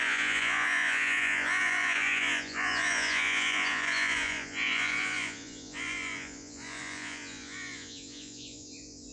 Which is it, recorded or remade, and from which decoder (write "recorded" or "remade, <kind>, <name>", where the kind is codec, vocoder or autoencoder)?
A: remade, vocoder, Vocos